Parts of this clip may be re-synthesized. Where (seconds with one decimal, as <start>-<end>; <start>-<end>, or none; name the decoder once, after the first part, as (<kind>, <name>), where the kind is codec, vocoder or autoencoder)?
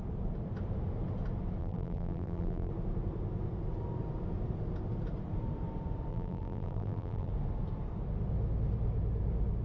1.6-2.7 (vocoder, BigVGAN v2); 6.1-7.3